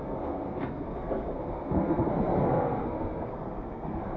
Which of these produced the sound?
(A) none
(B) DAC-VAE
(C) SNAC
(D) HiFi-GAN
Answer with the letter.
C